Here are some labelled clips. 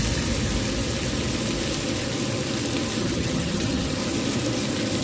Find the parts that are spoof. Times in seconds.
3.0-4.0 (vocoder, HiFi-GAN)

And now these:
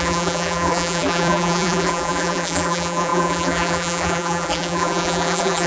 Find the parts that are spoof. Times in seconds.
0.0-5.7 (vocoder, BigVGAN v2)